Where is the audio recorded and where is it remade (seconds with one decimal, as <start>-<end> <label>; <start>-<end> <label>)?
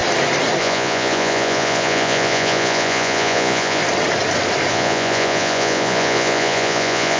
0.0-0.6 recorded; 0.6-3.8 remade; 3.8-4.7 recorded; 4.7-7.2 remade